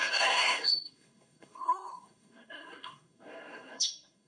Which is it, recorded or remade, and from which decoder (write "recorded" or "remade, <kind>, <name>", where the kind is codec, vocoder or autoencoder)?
remade, codec, SNAC